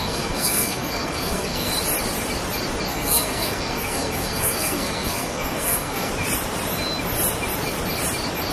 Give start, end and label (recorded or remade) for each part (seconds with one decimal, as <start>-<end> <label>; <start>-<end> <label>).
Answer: 0.0-1.7 remade; 1.7-2.9 recorded; 2.9-6.1 remade; 6.1-8.5 recorded

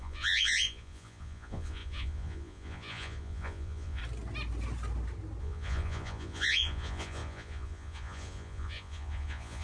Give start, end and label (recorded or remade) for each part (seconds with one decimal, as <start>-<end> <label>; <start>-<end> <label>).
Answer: 0.0-4.0 remade; 4.0-5.4 recorded; 5.4-9.6 remade